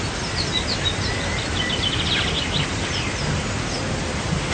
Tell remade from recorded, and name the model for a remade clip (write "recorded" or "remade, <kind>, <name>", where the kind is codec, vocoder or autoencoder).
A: recorded